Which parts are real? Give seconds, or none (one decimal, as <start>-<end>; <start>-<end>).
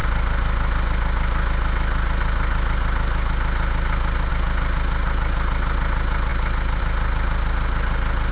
0.0-8.3